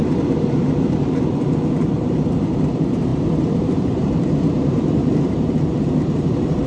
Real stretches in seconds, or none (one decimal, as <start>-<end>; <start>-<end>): 0.0-1.8